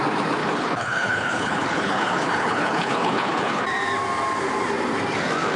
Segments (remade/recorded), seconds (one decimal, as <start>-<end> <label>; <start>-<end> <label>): 0.0-0.4 recorded; 0.4-3.6 remade; 3.6-5.6 recorded